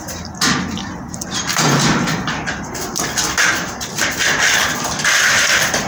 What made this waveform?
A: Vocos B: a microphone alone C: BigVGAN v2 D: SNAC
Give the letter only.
B